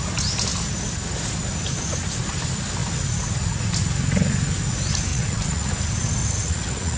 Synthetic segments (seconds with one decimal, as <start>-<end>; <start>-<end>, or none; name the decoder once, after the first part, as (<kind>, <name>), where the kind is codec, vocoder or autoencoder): 5.1-5.7 (vocoder, Vocos); 6.2-7.0